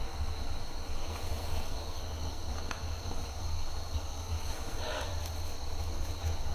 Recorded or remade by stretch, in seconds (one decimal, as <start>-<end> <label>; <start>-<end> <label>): 0.0-5.1 remade; 5.1-5.8 recorded; 5.8-6.5 remade